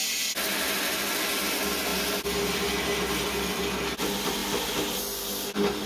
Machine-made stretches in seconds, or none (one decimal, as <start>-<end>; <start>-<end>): none